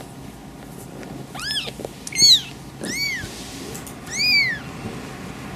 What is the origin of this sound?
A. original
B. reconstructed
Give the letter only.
A